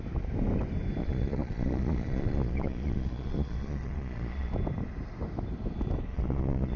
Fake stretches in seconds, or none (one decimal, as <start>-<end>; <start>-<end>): 1.0-4.5; 6.1-6.8